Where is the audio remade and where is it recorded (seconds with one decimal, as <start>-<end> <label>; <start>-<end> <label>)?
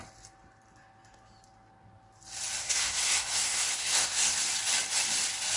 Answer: 0.0-2.6 recorded; 2.6-4.5 remade; 4.5-5.6 recorded